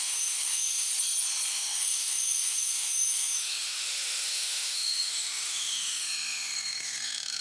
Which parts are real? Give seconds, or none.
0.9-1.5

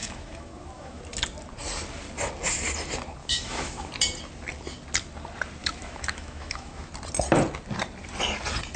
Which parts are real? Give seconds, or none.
1.0-3.2; 3.9-5.6; 6.9-8.8